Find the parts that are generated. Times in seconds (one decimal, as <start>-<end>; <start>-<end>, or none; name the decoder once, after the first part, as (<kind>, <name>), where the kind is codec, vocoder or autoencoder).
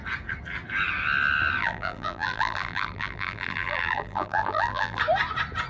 1.6-5.0 (vocoder, BigVGAN v2)